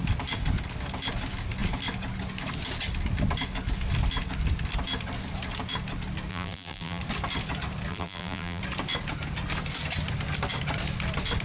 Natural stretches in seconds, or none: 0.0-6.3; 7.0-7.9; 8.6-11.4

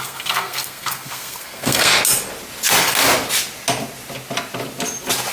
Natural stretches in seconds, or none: 1.9-5.3

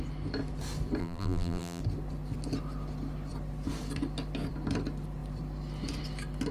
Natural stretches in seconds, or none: 0.0-1.0; 1.8-6.5

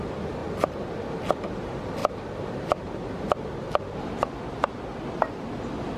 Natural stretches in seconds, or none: 0.0-0.4; 0.9-2.0; 5.6-6.0